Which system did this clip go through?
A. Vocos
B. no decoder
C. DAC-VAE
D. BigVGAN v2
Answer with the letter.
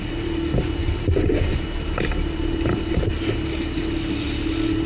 B